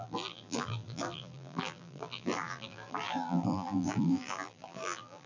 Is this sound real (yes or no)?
no